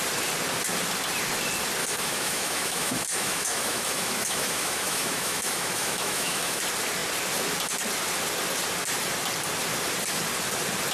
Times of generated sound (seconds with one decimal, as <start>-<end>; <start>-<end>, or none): 1.8-6.6